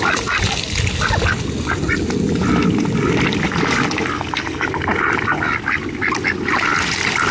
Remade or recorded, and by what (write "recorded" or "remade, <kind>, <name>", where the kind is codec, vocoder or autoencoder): recorded